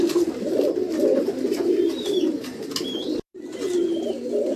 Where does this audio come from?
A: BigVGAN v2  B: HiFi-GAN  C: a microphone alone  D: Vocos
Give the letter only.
C